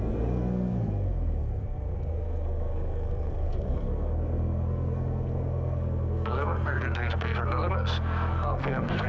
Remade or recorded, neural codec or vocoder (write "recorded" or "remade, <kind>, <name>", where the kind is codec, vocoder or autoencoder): remade, codec, SNAC